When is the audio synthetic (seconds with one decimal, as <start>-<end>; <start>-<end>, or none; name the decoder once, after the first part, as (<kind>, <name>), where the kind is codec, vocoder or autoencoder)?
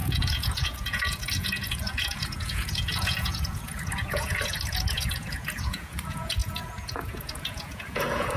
0.0-8.4 (vocoder, Vocos)